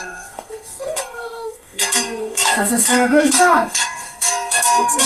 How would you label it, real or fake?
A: fake